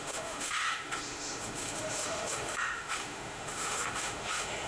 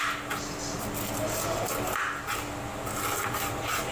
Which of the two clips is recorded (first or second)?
second